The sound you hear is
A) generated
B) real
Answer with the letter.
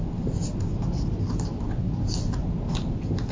B